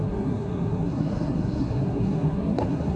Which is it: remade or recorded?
remade